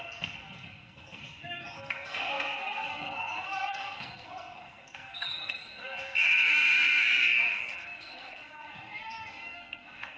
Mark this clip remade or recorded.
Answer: remade